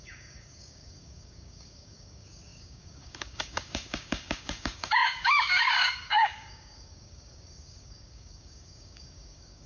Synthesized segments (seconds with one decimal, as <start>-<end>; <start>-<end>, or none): 0.0-9.7